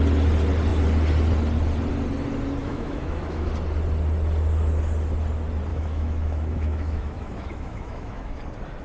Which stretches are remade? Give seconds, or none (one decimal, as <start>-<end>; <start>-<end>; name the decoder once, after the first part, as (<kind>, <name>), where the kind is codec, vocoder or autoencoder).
2.6-3.5 (autoencoder, DAC-VAE); 5.7-8.4